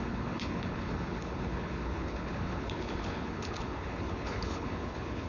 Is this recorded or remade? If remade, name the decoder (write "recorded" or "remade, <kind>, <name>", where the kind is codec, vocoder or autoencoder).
remade, codec, HILCodec